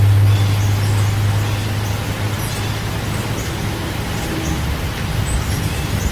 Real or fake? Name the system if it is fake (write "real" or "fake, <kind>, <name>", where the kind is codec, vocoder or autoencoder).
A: real